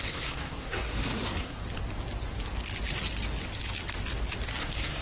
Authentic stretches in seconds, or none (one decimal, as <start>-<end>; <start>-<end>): 1.6-4.6